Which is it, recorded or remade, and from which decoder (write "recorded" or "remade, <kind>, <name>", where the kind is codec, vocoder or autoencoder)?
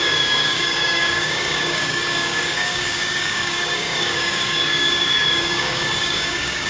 remade, codec, DAC